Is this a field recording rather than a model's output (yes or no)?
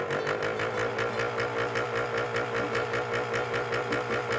yes